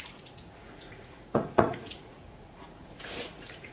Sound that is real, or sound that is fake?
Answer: fake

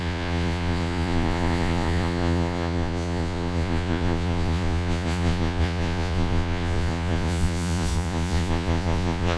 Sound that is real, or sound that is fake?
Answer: fake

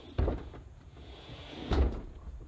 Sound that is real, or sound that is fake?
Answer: fake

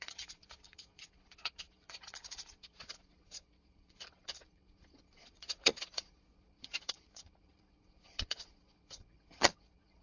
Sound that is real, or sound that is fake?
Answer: fake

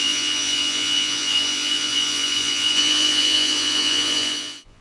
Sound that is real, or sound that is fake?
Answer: fake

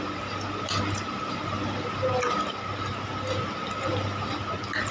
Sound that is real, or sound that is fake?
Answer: real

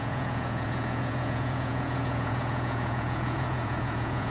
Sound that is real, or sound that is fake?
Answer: fake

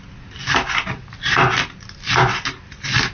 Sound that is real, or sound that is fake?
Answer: real